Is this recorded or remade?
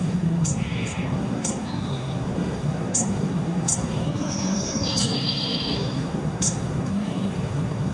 remade